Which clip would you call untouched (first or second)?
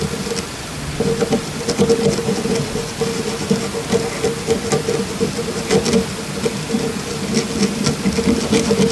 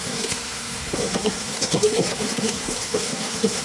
first